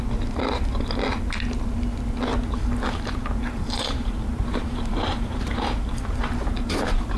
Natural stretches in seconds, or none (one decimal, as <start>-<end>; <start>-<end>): 0.0-3.4